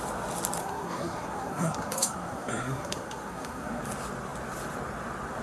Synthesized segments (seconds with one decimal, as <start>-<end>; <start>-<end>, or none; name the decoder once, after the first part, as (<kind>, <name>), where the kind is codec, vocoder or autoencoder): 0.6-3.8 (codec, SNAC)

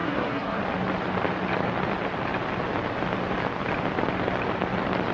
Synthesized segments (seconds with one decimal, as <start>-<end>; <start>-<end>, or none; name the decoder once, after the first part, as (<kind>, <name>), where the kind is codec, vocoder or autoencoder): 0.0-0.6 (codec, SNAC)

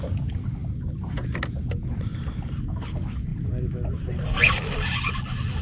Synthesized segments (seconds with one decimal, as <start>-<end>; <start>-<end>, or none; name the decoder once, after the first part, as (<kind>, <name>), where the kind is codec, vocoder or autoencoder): none